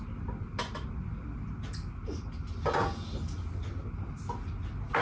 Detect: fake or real real